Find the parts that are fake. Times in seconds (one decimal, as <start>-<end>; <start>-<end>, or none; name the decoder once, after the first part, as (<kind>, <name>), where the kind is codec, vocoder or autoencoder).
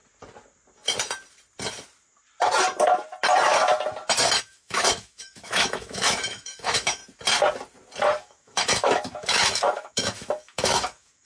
4.4-7.0 (autoencoder, DAC-VAE); 8.2-11.3